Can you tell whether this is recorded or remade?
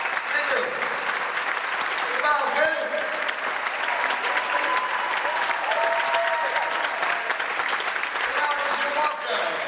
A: recorded